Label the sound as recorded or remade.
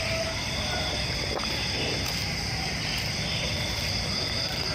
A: recorded